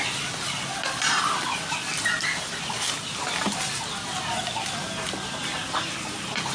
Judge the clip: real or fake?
real